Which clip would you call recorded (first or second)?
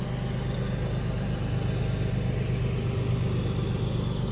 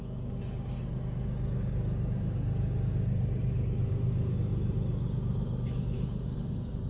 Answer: first